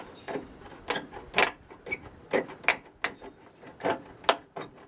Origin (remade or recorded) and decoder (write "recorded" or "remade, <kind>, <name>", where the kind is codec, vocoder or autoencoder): recorded